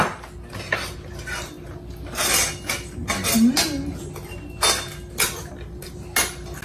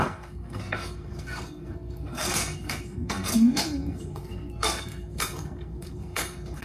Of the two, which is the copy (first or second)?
second